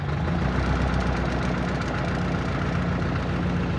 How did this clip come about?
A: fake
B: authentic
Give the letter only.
B